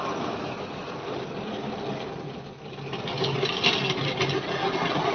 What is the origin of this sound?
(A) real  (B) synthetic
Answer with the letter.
A